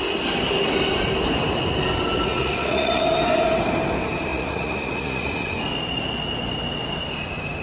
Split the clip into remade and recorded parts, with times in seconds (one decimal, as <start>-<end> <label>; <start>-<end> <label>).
0.0-2.3 recorded; 2.3-3.0 remade; 3.0-4.3 recorded; 4.3-5.5 remade; 5.5-7.6 recorded